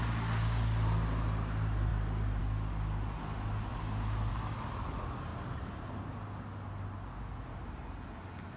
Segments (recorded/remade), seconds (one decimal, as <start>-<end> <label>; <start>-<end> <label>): 0.0-8.6 recorded